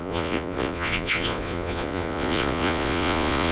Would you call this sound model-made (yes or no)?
yes